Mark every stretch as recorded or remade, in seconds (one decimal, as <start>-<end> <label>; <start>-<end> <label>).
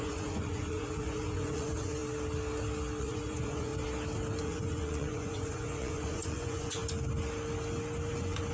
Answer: 0.0-2.0 remade; 2.0-3.0 recorded; 3.0-3.7 remade; 3.7-4.4 recorded; 4.4-6.8 remade; 6.8-8.1 recorded; 8.1-8.5 remade